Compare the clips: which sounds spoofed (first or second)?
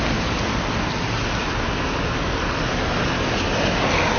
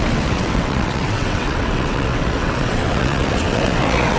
second